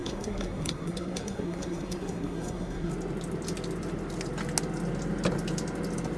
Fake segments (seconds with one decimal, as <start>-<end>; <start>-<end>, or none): 0.0-2.9